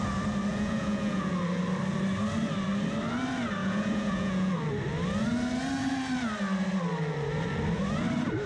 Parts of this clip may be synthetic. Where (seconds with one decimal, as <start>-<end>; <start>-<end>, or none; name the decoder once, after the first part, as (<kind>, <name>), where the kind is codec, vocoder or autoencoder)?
0.5-1.3 (vocoder, Vocos); 3.6-4.5

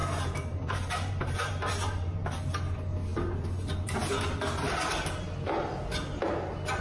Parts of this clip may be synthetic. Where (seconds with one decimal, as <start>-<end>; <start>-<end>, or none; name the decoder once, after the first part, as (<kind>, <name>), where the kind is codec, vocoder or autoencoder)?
0.0-2.5 (vocoder, BigVGAN v2)